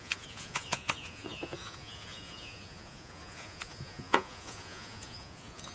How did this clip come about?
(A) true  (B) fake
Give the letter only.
B